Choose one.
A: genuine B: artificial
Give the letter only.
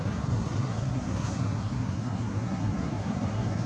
B